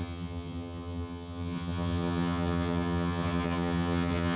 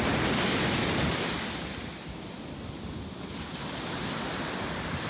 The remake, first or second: first